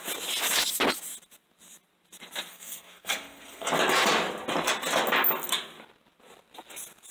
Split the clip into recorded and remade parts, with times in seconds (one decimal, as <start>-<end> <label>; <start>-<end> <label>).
0.0-2.5 recorded; 2.5-3.7 remade; 3.7-7.1 recorded